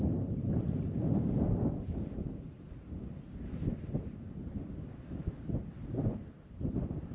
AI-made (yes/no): no